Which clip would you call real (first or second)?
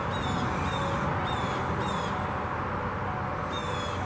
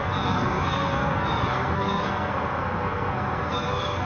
first